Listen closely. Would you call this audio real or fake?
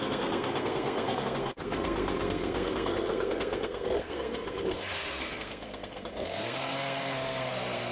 fake